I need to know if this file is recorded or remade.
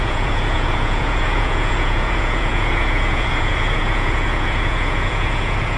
remade